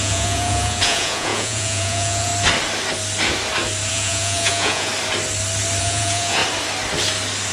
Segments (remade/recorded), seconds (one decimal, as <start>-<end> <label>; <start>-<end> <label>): 0.0-2.3 remade; 2.3-3.9 recorded; 3.9-4.9 remade; 4.9-5.8 recorded; 5.8-6.4 remade; 6.4-7.5 recorded